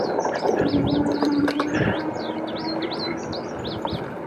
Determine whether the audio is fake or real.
real